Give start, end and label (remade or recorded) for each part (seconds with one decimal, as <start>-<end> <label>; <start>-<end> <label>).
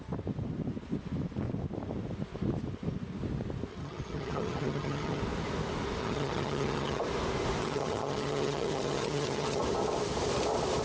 0.0-3.7 recorded; 3.7-5.2 remade; 5.2-6.0 recorded; 6.0-7.0 remade; 7.0-7.6 recorded; 7.6-9.6 remade; 9.6-10.8 recorded